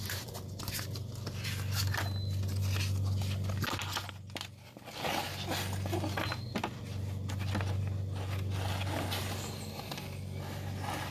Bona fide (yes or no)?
yes